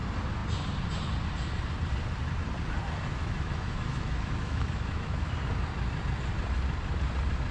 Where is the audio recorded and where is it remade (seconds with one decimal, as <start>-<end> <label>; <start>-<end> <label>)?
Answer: 0.0-3.2 recorded; 3.2-5.3 remade; 5.3-7.5 recorded